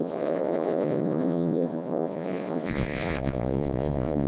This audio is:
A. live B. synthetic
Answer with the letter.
B